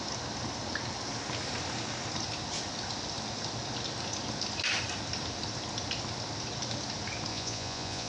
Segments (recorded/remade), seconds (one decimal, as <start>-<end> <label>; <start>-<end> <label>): 0.0-7.3 recorded; 7.3-8.1 remade